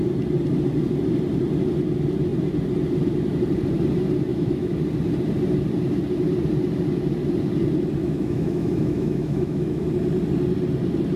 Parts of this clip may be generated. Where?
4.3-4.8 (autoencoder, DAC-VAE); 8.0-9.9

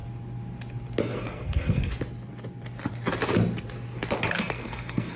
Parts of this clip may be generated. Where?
1.0-1.9 (codec, SNAC); 4.3-5.2

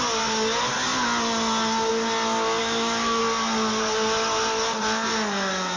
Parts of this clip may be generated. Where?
2.6-3.2 (autoencoder, DAC-VAE)

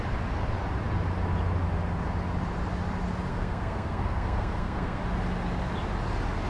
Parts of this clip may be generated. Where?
3.3-5.0 (codec, SNAC)

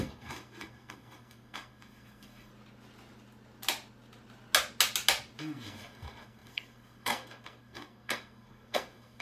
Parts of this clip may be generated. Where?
0.0-2.5 (codec, SNAC); 5.4-9.2